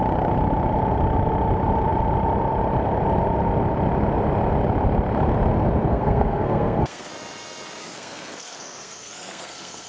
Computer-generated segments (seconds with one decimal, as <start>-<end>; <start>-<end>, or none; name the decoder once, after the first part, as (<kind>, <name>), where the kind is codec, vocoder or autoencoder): 5.9-7.1 (codec, SNAC); 7.8-9.9